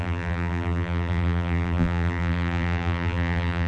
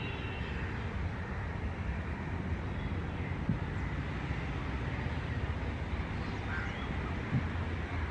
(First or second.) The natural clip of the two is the second